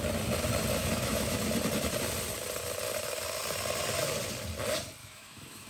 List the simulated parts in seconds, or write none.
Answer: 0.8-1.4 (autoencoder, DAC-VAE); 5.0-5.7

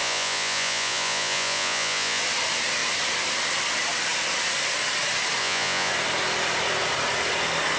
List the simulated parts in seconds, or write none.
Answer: 0.0-2.2 (vocoder, Vocos); 5.4-5.9